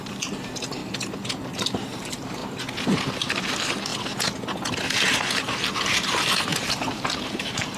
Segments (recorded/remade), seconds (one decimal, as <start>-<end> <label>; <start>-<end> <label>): 0.0-0.8 remade; 0.8-1.4 recorded; 1.4-2.4 remade; 2.4-3.1 recorded; 3.1-3.9 remade; 3.9-4.9 recorded; 4.9-7.8 remade